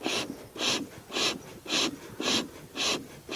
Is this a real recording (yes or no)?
yes